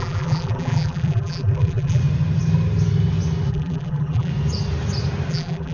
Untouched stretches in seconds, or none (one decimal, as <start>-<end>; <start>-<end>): 2.0-3.5; 4.3-5.3